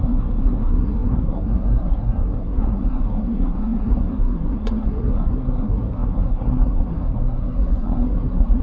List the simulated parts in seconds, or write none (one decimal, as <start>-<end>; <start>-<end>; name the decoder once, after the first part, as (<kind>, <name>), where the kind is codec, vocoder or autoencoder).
0.0-8.6 (codec, SNAC)